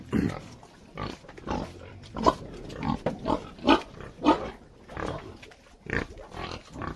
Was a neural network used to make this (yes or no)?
no